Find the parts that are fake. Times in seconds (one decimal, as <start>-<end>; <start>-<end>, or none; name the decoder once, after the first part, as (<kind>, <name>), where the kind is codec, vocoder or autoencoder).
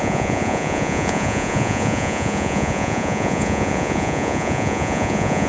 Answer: 0.0-5.5 (vocoder, Vocos)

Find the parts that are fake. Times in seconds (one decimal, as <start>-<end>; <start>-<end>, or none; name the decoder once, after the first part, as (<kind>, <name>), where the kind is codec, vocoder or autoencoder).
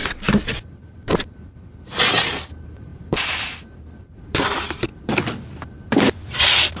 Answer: 0.0-1.9 (vocoder, BigVGAN v2); 2.9-3.5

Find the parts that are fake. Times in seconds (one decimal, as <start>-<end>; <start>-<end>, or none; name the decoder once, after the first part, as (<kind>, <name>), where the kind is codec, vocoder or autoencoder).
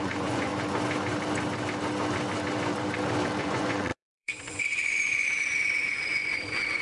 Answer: 0.0-0.5 (vocoder, Vocos); 3.4-6.8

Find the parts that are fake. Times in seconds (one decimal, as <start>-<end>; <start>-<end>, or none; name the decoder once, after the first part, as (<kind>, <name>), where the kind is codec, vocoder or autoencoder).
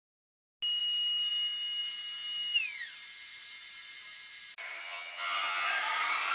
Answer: 4.8-5.7 (vocoder, HiFi-GAN)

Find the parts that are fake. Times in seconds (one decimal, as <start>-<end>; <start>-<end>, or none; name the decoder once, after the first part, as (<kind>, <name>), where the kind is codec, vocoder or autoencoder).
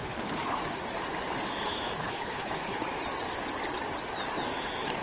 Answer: 0.0-0.6 (codec, HILCodec); 2.0-2.8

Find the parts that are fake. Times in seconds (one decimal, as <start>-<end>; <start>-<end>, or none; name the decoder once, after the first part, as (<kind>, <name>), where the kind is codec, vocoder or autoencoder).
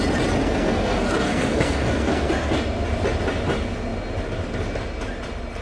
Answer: 0.4-2.3 (codec, SNAC)